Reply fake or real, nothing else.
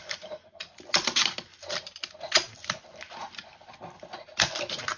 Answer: real